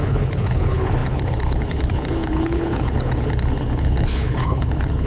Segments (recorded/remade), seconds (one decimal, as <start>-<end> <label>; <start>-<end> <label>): 0.0-5.1 remade